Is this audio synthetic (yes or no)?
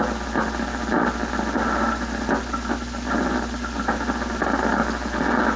no